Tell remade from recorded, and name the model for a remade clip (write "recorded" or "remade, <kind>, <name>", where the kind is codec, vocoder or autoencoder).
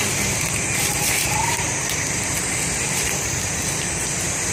remade, vocoder, BigVGAN v2